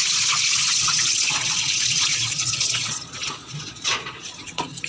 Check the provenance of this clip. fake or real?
fake